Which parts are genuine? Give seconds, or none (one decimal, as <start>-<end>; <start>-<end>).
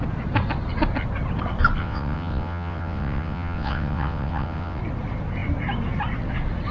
0.0-1.8; 4.8-6.7